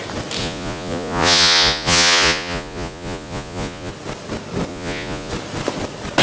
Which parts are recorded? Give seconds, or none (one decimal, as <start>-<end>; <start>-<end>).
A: 0.0-0.4; 3.9-4.7; 5.3-6.2